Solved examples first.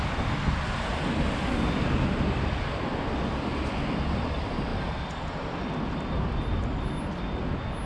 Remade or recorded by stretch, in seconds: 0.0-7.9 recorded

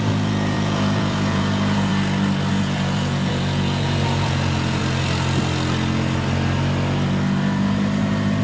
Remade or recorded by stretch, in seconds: 0.0-1.9 remade; 1.9-2.5 recorded; 2.5-4.8 remade; 4.8-8.4 recorded

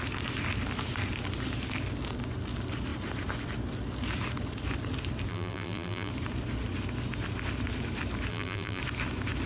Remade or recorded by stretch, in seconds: 0.0-5.3 recorded; 5.3-6.1 remade; 6.1-8.3 recorded; 8.3-8.8 remade; 8.8-9.5 recorded

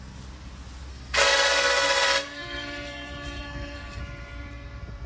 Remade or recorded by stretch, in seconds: 0.0-0.9 recorded; 0.9-4.0 remade; 4.0-5.1 recorded

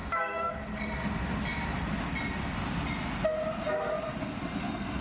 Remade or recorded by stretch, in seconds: 0.0-0.5 remade; 0.5-5.0 recorded

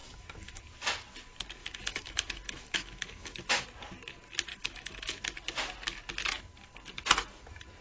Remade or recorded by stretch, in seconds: 0.0-0.6 remade; 0.6-1.6 recorded; 1.6-3.6 remade; 3.6-4.5 recorded; 4.5-5.2 remade; 5.2-7.8 recorded